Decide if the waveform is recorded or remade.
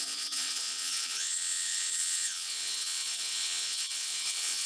remade